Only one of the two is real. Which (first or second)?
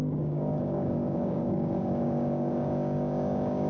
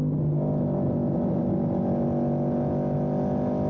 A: second